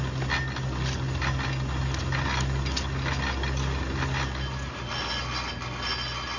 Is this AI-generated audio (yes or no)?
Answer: no